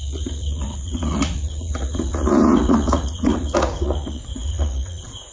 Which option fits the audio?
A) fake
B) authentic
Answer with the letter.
A